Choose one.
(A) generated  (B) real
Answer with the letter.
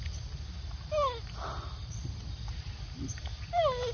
B